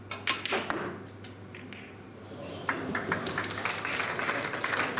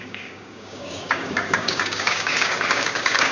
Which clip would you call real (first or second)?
first